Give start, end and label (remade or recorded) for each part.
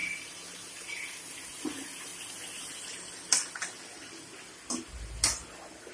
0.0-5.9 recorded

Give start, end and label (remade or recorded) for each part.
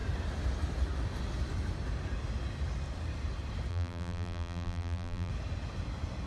0.0-3.7 recorded; 3.7-5.3 remade; 5.3-6.3 recorded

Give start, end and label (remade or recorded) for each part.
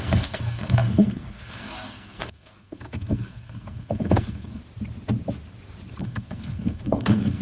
0.0-4.6 remade; 4.6-6.0 recorded; 6.0-7.4 remade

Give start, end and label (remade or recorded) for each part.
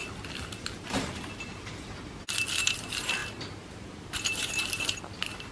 0.0-2.6 recorded; 2.6-5.5 remade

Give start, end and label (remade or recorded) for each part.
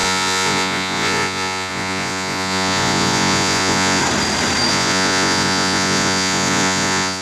0.0-4.0 remade; 4.0-4.7 recorded; 4.7-7.2 remade